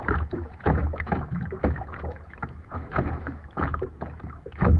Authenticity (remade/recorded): remade